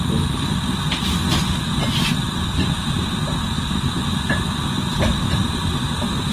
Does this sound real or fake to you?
real